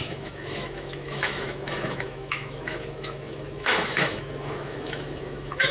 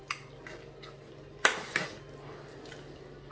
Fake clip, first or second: first